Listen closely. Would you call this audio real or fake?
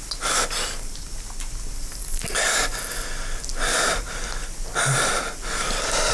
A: real